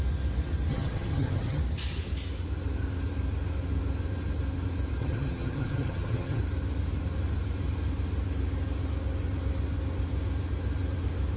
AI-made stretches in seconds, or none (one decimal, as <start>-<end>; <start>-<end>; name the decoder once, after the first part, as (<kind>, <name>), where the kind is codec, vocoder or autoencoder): 0.7-1.6 (vocoder, HiFi-GAN); 5.0-6.4